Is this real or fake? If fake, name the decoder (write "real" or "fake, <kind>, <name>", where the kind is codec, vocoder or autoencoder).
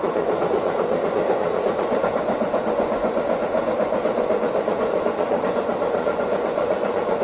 fake, vocoder, Vocos